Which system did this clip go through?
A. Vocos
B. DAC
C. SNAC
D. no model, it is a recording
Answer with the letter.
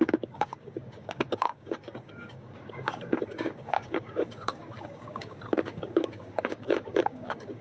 B